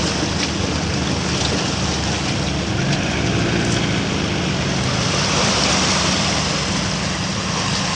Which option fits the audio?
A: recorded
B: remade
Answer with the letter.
A